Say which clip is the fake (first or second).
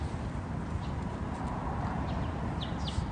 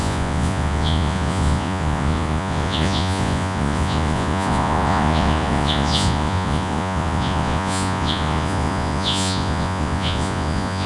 second